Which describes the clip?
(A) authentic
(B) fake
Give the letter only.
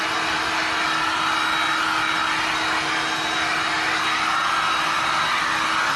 A